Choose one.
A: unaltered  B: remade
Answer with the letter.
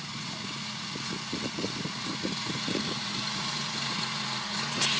B